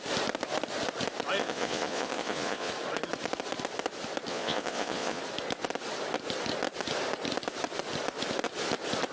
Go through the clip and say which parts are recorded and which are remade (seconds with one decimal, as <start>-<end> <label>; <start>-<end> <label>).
0.0-1.4 recorded; 1.4-2.7 remade; 2.7-4.3 recorded; 4.3-5.2 remade; 5.2-9.1 recorded